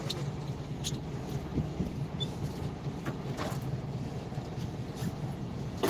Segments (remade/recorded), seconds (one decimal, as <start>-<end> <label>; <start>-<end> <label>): 0.0-5.9 recorded